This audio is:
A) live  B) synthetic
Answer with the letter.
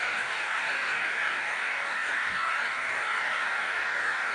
B